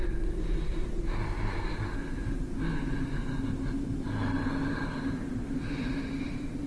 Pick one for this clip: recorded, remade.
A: recorded